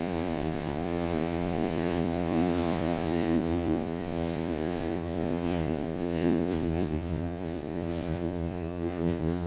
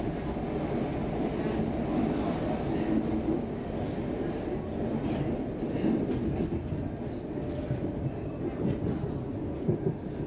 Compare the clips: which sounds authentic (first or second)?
second